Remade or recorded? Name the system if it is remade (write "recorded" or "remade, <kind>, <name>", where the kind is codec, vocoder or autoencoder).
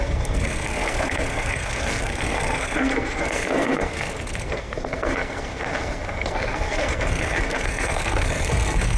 remade, codec, SNAC